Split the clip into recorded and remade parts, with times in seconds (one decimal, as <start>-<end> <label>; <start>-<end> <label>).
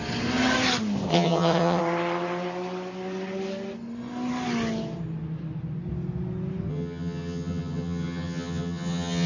0.0-1.1 recorded; 1.1-1.8 remade; 1.8-6.7 recorded; 6.7-9.3 remade